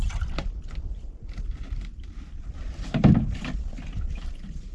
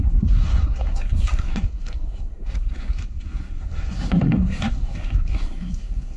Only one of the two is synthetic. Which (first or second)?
second